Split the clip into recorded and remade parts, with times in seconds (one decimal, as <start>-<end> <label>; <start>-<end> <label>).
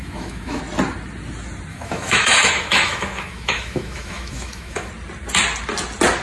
0.0-0.6 remade; 0.6-1.7 recorded; 1.7-4.9 remade; 4.9-6.2 recorded